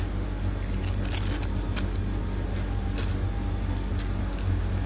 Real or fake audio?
real